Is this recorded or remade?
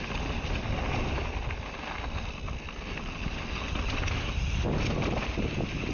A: recorded